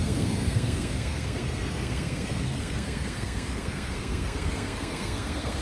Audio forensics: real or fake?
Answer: fake